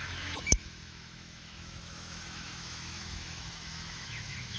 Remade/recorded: remade